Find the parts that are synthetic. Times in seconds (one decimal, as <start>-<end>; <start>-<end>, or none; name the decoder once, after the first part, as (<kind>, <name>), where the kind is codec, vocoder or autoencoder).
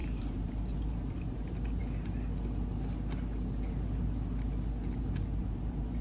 0.0-1.8 (vocoder, BigVGAN v2); 5.4-6.0